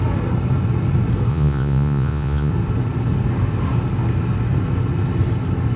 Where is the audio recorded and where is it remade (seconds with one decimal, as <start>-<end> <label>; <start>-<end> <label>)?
0.0-1.3 recorded; 1.3-2.5 remade; 2.5-5.8 recorded